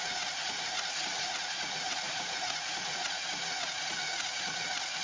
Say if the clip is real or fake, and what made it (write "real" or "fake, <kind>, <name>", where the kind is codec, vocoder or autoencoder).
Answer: fake, vocoder, Vocos